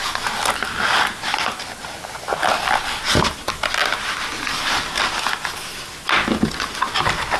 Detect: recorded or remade recorded